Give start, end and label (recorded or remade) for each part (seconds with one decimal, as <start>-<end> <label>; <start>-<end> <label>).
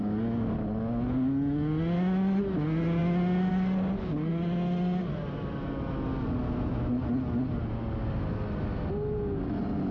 0.0-9.9 recorded